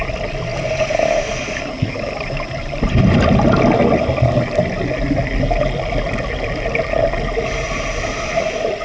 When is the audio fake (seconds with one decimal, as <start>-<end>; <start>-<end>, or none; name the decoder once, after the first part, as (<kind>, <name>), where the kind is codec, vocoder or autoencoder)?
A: none